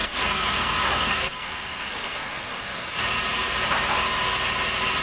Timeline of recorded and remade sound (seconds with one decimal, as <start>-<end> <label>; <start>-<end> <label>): 0.0-3.0 remade; 3.0-5.0 recorded